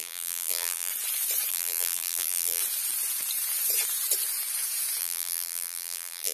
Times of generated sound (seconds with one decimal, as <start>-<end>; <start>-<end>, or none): 0.0-0.9; 1.5-2.6; 5.0-6.3